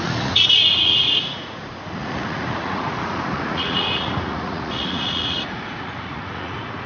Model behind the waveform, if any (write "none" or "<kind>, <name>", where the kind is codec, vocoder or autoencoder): vocoder, Vocos